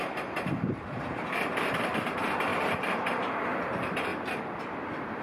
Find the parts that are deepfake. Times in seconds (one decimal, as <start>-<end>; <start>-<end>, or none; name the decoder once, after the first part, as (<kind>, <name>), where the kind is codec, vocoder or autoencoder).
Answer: 0.0-4.1 (vocoder, BigVGAN v2)

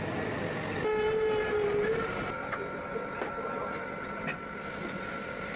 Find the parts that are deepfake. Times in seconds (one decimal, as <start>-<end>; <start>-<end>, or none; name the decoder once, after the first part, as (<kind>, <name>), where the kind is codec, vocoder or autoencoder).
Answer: none

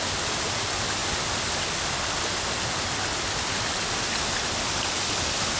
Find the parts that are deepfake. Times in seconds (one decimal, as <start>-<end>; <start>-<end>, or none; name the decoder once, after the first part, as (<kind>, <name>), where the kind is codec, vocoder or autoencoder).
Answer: none

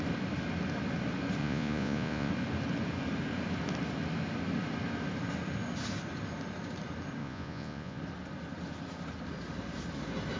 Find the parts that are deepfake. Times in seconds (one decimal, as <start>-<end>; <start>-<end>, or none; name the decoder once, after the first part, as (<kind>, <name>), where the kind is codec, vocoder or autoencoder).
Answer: 1.4-2.3 (vocoder, Vocos); 7.2-8.0

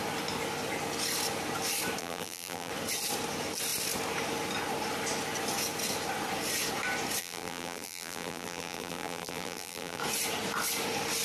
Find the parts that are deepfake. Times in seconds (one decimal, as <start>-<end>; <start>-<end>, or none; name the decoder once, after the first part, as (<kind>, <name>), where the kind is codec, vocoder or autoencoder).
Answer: 2.0-2.7 (vocoder, BigVGAN v2); 7.2-10.0